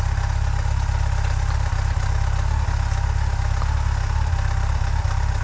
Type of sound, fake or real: real